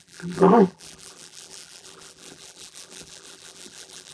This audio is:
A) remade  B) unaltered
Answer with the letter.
A